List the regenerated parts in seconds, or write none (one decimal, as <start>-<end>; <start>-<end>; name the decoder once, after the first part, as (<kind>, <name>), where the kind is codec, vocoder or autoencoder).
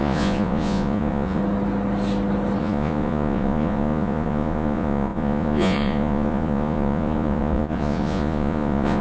0.0-1.4 (vocoder, Vocos); 2.6-9.0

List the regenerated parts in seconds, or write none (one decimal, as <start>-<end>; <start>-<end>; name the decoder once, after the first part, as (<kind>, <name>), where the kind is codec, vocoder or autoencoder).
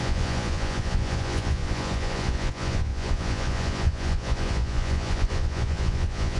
0.0-6.4 (vocoder, Vocos)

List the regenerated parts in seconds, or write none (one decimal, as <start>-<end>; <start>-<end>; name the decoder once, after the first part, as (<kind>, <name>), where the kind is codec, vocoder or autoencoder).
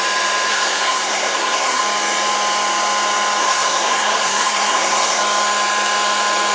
0.5-1.8 (codec, SNAC); 3.4-5.2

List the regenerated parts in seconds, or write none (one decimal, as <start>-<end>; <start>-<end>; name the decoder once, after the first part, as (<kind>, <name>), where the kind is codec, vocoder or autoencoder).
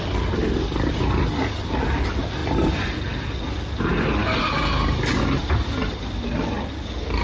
none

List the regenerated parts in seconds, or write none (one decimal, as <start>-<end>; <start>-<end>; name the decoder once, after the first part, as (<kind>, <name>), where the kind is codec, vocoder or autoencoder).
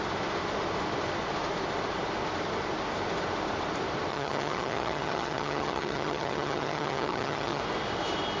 4.1-7.6 (vocoder, HiFi-GAN)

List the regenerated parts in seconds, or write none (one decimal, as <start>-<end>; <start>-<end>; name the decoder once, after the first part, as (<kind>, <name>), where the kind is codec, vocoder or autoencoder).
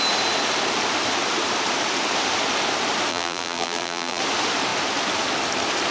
3.1-4.2 (vocoder, BigVGAN v2)